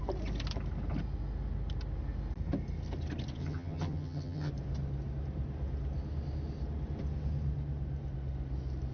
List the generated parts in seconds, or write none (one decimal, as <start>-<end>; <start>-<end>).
3.4-4.5